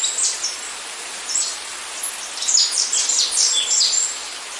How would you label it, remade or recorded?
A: recorded